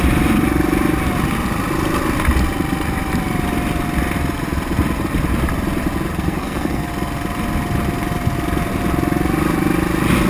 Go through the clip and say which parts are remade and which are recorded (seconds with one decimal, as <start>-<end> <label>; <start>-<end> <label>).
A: 0.0-6.1 recorded; 6.1-6.9 remade; 6.9-10.3 recorded